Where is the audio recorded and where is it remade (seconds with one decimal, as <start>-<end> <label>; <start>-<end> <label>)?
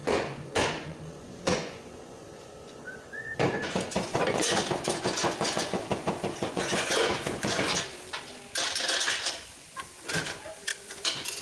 0.0-7.7 remade; 7.7-8.8 recorded; 8.8-11.4 remade